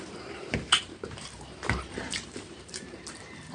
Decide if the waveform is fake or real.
fake